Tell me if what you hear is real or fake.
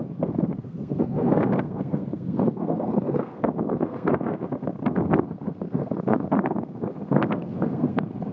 fake